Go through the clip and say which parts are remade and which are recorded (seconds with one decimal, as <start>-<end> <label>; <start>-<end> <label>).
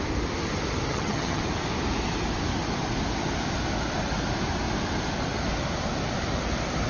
0.0-0.9 recorded; 0.9-1.4 remade; 1.4-6.9 recorded